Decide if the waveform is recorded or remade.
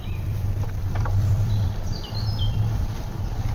remade